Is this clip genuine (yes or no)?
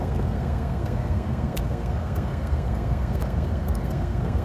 no